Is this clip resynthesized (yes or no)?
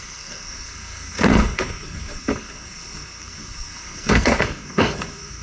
yes